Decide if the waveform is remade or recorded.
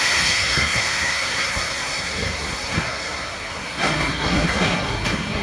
remade